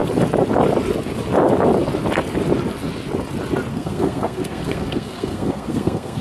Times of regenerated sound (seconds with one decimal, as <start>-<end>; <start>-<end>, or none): 3.7-6.2